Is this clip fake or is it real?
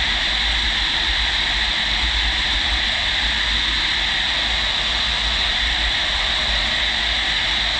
real